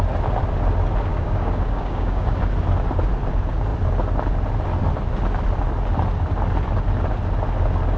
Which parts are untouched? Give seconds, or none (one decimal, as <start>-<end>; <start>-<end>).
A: 0.0-1.1; 2.4-8.0